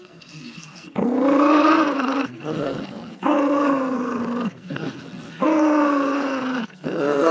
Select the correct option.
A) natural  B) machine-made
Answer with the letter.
B